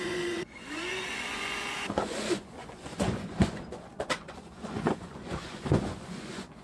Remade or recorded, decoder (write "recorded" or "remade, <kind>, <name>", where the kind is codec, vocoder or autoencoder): remade, vocoder, Vocos